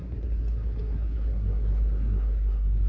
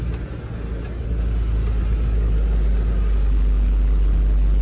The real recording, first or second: second